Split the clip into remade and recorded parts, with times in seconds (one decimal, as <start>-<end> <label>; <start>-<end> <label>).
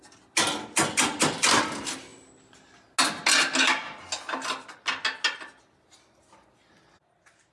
0.0-7.5 recorded